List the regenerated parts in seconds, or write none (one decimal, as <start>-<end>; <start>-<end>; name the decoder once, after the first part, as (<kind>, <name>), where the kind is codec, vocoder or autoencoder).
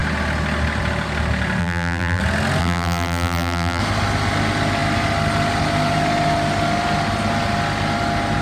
1.6-2.2 (vocoder, BigVGAN v2); 2.6-3.8